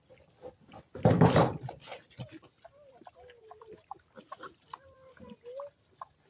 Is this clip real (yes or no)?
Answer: yes